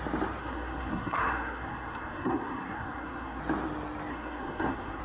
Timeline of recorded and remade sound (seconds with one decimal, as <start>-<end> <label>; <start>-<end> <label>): 0.0-0.4 recorded; 0.4-3.4 remade; 3.4-4.1 recorded; 4.1-5.0 remade